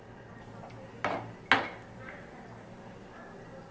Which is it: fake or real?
real